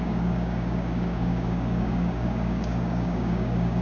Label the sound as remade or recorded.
remade